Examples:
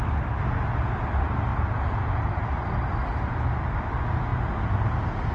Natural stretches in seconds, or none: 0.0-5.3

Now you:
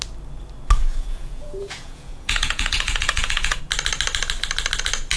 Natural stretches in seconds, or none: 0.0-0.8; 3.6-5.2

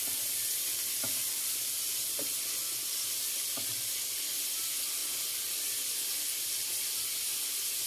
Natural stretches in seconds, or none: 5.0-5.5

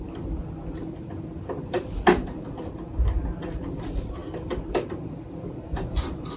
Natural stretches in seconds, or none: 0.0-6.4